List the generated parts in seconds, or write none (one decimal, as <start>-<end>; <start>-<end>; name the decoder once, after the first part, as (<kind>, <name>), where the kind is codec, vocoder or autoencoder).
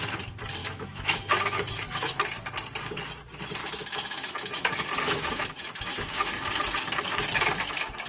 0.6-2.2 (autoencoder, DAC-VAE); 3.6-6.3